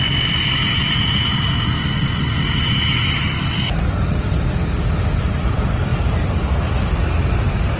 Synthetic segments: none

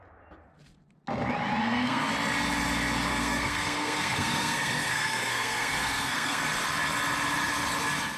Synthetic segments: 1.6-2.1; 3.1-6.4

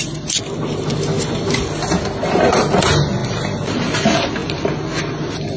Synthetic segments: none